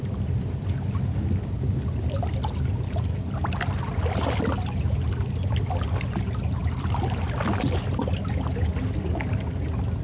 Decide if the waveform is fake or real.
real